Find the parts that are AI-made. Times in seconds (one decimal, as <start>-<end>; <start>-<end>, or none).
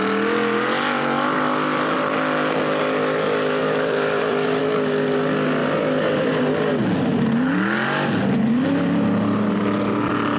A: 3.6-4.6; 5.6-6.4; 7.1-8.4